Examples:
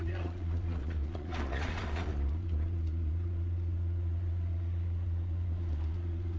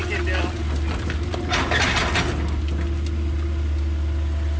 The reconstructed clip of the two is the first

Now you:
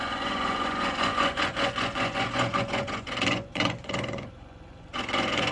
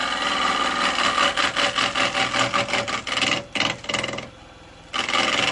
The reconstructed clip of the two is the first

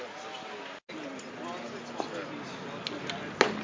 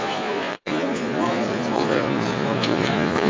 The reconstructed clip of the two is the second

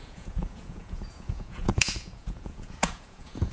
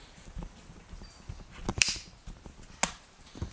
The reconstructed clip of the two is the first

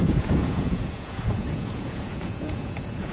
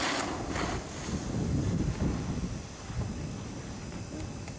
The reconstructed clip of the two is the first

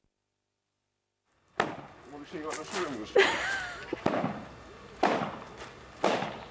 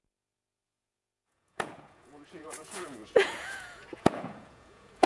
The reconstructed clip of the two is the second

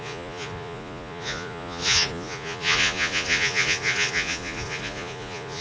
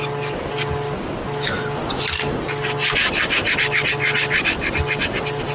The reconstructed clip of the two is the first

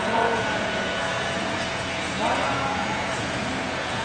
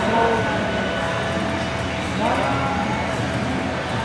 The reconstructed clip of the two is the first